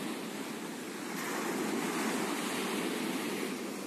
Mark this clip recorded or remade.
recorded